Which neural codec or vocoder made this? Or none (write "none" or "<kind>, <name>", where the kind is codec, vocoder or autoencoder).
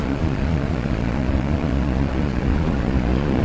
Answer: vocoder, Vocos